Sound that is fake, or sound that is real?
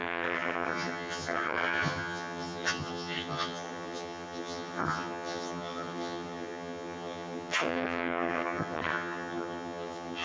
fake